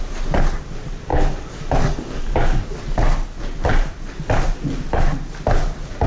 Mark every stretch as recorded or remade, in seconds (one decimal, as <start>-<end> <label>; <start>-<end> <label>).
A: 0.0-1.1 recorded; 1.1-2.8 remade; 2.8-6.1 recorded